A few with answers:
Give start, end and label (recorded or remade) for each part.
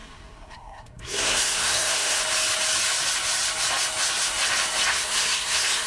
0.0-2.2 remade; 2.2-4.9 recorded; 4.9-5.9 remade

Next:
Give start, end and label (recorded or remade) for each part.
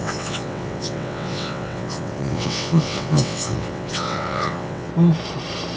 0.0-4.9 remade; 4.9-5.8 recorded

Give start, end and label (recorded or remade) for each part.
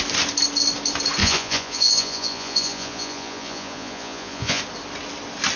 0.0-1.2 recorded; 1.2-4.6 remade; 4.6-5.6 recorded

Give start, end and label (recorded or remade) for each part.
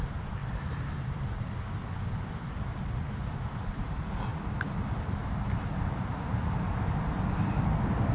0.0-4.3 recorded; 4.3-6.2 remade; 6.2-8.1 recorded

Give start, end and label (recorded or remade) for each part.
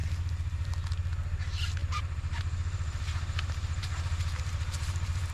0.0-1.8 recorded; 1.8-5.3 remade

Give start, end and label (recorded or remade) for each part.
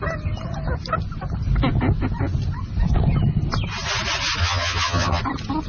0.0-4.4 recorded; 4.4-5.2 remade; 5.2-5.7 recorded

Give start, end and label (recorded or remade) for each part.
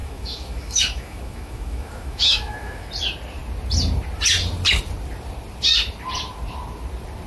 0.0-2.9 remade; 2.9-7.3 recorded